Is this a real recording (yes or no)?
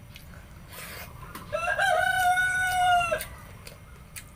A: no